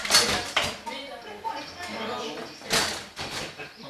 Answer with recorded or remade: remade